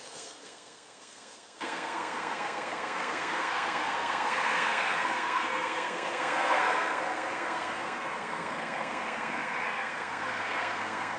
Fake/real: fake